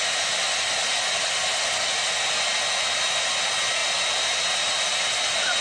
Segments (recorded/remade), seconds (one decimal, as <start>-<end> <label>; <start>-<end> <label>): 0.0-5.6 recorded